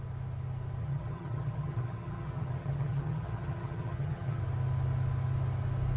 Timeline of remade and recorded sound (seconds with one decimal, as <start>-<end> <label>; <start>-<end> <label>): 0.0-0.8 recorded; 0.8-4.4 remade; 4.4-6.0 recorded